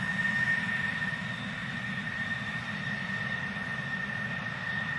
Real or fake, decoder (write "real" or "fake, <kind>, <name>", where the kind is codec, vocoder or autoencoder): real